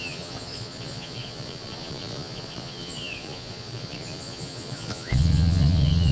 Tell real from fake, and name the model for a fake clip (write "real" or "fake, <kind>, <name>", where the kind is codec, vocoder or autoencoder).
fake, vocoder, Vocos